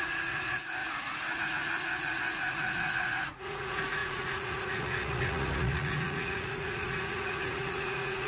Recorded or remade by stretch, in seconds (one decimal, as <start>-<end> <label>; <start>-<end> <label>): 0.0-0.8 remade; 0.8-1.4 recorded; 1.4-8.3 remade